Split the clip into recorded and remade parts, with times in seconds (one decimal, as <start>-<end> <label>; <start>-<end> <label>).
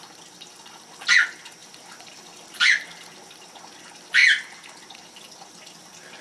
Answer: 0.0-1.6 recorded; 1.6-2.7 remade; 2.7-4.2 recorded; 4.2-5.2 remade; 5.2-6.2 recorded